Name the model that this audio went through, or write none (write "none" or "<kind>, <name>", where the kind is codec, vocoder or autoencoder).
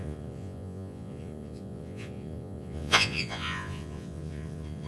vocoder, Vocos